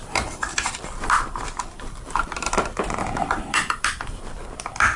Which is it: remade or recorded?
remade